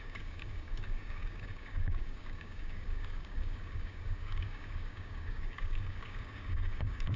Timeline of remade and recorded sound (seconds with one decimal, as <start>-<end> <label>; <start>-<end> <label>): 0.0-7.2 remade